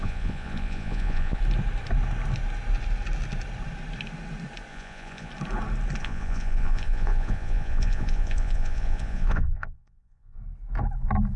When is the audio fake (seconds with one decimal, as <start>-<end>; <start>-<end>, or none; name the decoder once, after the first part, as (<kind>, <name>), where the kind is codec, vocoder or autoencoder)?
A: 0.0-1.4 (vocoder, Vocos); 4.7-5.3; 6.0-10.4